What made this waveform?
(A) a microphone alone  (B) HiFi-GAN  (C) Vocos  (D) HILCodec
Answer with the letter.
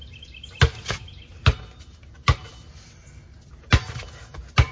A